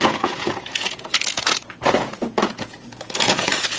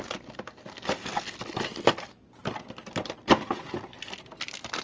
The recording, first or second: second